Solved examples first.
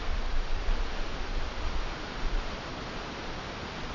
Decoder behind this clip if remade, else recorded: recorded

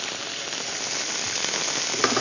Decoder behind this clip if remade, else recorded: recorded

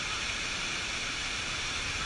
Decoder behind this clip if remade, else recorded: remade, vocoder, BigVGAN v2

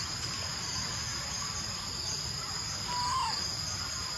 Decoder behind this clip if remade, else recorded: recorded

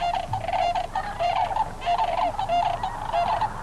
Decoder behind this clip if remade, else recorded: recorded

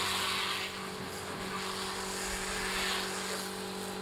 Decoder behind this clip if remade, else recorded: recorded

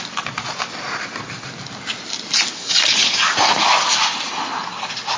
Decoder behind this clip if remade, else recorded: recorded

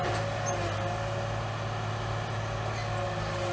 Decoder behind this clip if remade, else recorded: recorded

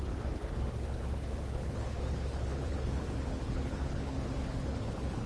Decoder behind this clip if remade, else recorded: remade, codec, HILCodec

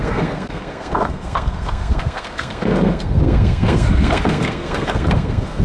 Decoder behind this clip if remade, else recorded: remade, codec, SNAC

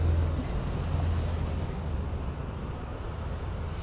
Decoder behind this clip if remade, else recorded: recorded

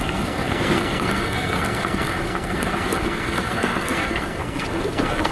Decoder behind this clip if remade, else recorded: remade, codec, SNAC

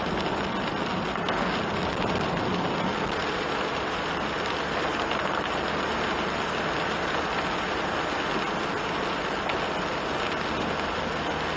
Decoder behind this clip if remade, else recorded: recorded